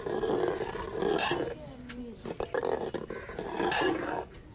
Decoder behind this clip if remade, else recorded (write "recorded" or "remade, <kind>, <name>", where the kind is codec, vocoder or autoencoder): recorded